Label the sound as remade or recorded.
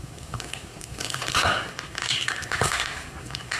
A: remade